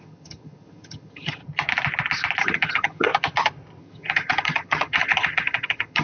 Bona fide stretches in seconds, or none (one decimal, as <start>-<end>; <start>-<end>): 1.4-2.4; 3.1-3.8

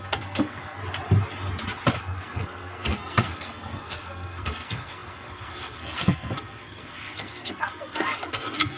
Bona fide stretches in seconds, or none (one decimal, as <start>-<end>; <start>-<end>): 0.8-2.0

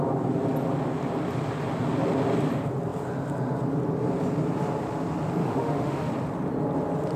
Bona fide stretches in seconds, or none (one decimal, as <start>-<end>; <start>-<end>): 0.0-5.4; 6.1-7.2